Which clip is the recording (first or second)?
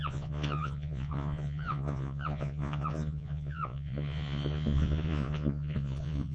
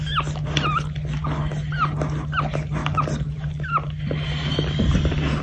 second